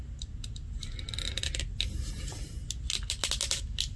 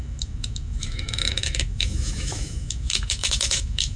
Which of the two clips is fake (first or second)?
second